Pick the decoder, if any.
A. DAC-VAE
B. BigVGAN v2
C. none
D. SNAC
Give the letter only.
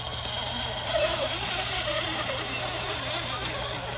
C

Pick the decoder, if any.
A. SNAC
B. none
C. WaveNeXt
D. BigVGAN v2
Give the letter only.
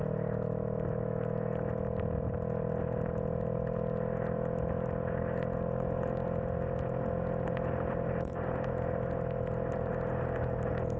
B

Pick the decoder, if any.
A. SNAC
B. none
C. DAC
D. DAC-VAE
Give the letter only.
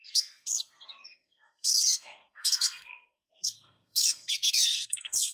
A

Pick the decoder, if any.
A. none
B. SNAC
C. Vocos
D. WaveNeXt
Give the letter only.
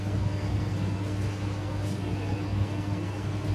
B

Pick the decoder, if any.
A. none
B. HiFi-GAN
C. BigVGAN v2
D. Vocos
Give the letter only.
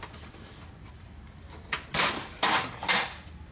A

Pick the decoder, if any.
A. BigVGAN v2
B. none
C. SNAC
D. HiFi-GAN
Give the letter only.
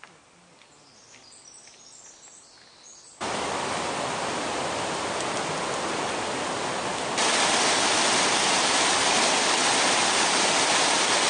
B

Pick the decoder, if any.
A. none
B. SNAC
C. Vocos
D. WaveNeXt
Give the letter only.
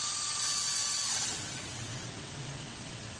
D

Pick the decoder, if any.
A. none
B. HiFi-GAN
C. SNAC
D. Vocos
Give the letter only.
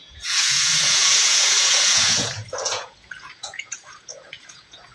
D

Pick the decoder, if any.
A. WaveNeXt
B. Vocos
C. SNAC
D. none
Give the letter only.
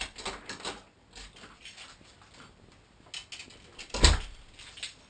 D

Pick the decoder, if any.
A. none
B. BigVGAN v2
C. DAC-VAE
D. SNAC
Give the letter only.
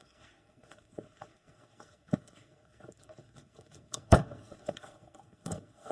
D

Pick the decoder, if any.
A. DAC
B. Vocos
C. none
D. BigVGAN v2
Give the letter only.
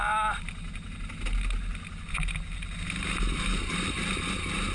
C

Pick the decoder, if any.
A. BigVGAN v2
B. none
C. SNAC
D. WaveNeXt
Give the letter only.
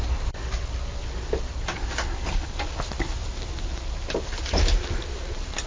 B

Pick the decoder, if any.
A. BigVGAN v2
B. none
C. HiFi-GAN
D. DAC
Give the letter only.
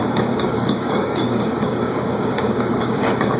D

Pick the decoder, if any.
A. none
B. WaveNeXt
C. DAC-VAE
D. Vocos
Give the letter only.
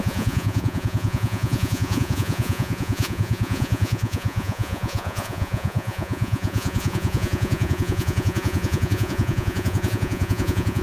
D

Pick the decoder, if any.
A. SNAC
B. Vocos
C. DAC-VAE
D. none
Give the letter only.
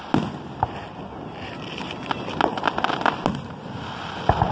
D